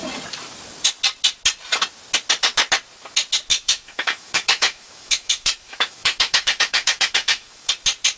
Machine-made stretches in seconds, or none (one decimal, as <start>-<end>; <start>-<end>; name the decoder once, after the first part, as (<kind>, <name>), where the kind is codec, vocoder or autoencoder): 3.5-7.7 (autoencoder, DAC-VAE)